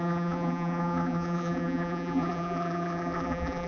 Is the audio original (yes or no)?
no